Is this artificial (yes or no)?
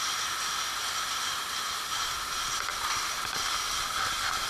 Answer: no